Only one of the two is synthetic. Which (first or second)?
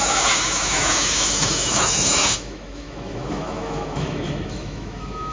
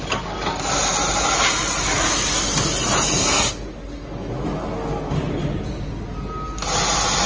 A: first